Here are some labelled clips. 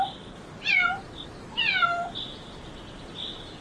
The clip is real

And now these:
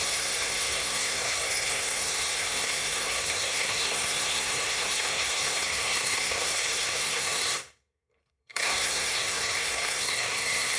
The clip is fake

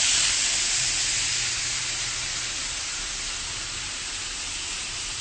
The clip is real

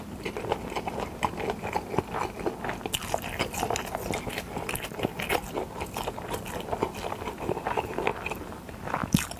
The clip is real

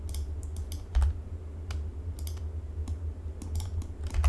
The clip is real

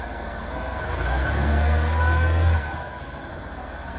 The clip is fake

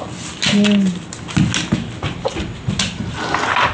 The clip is real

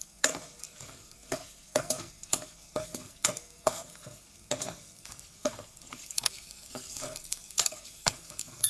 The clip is fake